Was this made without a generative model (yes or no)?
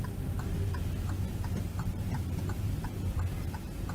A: yes